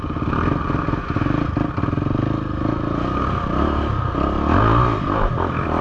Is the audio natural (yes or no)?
yes